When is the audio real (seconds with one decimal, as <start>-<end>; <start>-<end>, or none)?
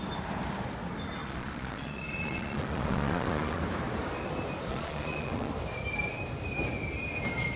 0.0-1.2; 3.6-4.7; 5.5-7.6